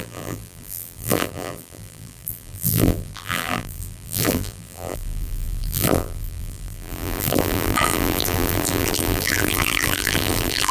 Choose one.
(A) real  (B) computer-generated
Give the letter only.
B